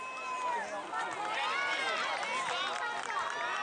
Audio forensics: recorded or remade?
recorded